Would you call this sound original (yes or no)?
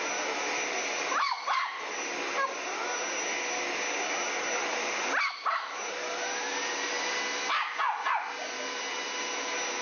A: yes